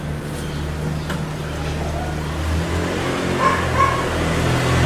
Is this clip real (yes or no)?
yes